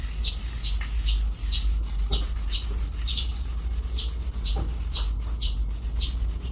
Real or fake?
real